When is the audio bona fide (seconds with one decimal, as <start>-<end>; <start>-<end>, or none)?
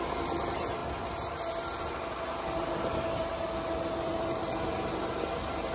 0.0-5.7